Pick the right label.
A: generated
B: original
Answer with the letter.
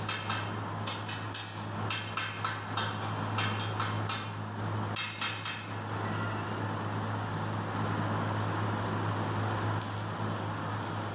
B